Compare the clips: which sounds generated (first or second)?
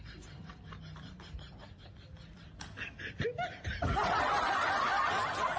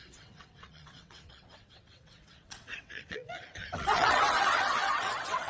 second